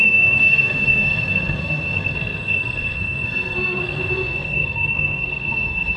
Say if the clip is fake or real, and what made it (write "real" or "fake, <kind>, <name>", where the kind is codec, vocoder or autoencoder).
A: fake, codec, SNAC